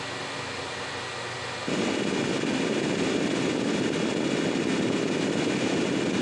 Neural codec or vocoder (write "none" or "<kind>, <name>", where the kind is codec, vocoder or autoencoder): none